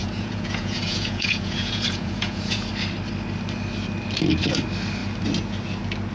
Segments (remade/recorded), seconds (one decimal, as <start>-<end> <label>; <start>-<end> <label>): 0.0-2.7 remade; 2.7-6.1 recorded